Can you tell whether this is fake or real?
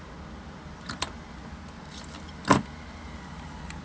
real